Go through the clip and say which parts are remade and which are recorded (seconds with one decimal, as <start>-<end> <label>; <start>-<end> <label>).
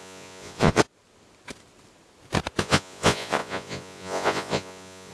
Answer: 0.0-0.8 remade; 0.8-2.6 recorded; 2.6-5.1 remade